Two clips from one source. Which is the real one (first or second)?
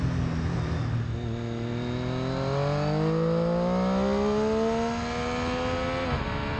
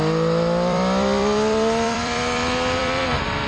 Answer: first